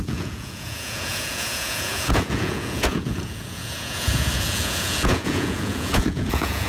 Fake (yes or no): yes